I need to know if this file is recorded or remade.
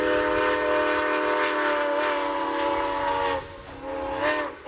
recorded